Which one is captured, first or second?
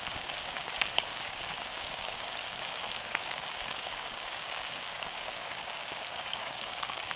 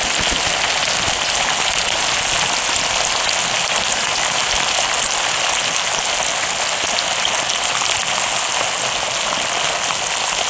second